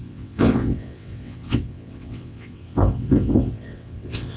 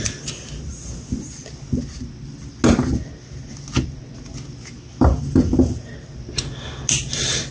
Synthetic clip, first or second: first